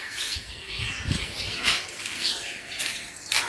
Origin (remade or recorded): remade